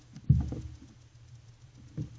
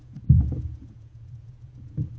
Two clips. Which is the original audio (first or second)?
first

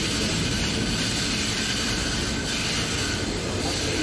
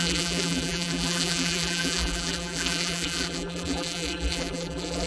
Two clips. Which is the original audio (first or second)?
first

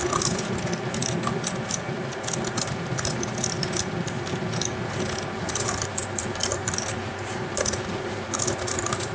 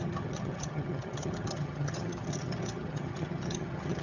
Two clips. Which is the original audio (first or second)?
first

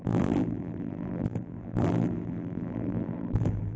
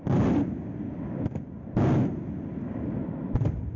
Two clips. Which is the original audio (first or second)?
second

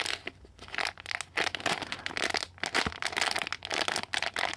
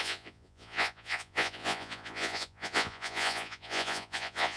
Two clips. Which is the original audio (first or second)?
first